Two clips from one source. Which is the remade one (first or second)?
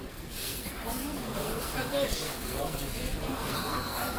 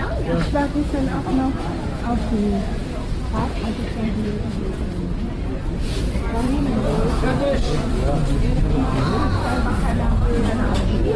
first